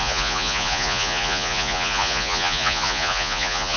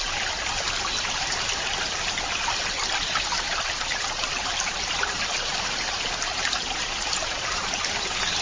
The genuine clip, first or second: second